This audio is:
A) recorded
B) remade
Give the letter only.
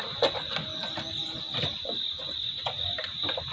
A